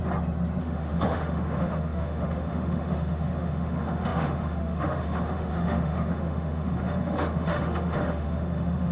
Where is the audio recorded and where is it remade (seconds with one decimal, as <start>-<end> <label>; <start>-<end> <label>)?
0.0-0.6 recorded; 0.6-8.9 remade